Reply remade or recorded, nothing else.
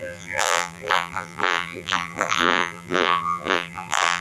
remade